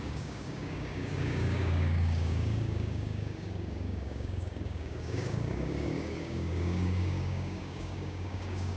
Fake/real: fake